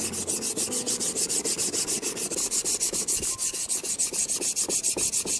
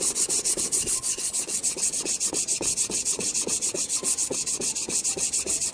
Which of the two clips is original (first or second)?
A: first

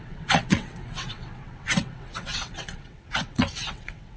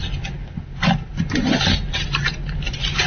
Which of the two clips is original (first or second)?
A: second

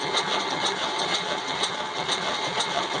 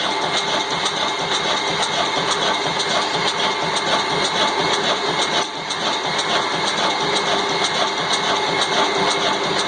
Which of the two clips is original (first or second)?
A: second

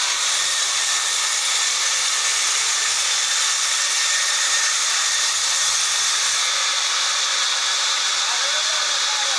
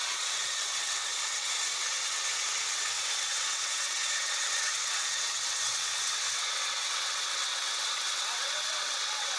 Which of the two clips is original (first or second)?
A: first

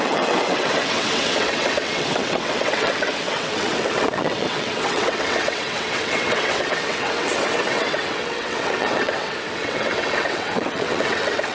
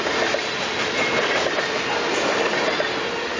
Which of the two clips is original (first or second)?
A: second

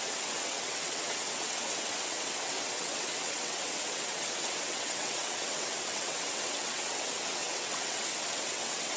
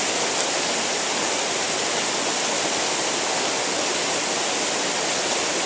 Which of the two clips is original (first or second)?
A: second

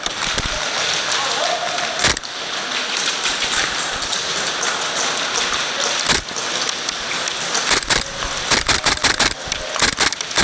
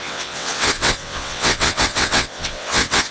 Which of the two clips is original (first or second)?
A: first